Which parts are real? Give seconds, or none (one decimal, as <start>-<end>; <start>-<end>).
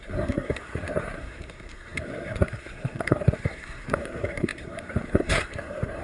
none